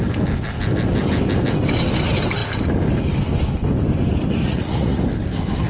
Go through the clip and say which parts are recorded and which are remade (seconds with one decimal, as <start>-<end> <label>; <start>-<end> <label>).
0.0-4.4 recorded; 4.4-5.0 remade; 5.0-5.7 recorded